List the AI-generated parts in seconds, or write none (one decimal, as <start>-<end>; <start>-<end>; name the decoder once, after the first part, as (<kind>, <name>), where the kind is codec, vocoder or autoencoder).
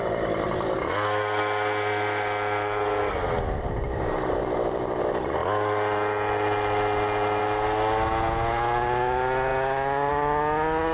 none